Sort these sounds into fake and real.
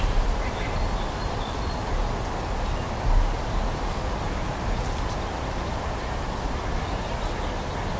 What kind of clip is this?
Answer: real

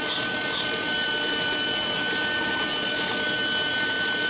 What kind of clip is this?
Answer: real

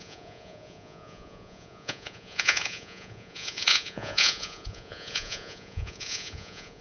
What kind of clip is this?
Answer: fake